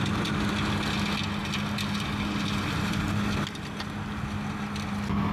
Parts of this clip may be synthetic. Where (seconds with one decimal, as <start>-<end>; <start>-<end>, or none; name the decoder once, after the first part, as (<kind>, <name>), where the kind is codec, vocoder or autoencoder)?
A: none